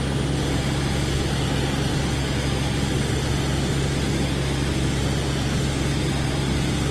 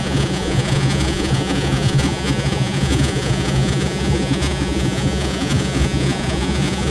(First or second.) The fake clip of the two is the second